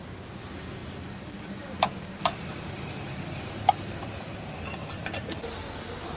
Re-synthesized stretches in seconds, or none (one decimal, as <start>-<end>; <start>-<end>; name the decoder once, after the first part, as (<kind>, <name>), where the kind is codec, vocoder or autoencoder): 0.8-4.5 (vocoder, BigVGAN v2)